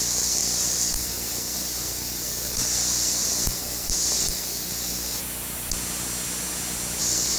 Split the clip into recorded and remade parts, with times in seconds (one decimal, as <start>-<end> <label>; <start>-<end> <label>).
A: 0.0-5.2 remade; 5.2-7.0 recorded; 7.0-7.4 remade